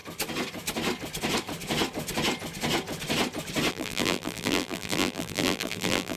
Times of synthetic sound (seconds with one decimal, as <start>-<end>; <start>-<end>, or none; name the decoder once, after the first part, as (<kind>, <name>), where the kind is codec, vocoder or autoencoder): 3.7-6.2 (vocoder, BigVGAN v2)